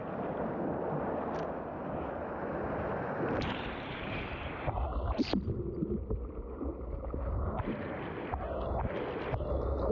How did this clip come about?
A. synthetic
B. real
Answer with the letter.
B